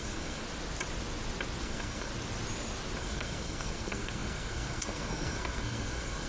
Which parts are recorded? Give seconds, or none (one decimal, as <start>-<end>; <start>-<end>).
0.4-1.6; 2.1-3.0